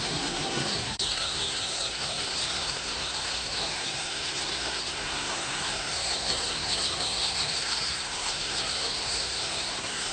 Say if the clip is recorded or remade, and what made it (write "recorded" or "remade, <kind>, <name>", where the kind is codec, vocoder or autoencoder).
remade, codec, SNAC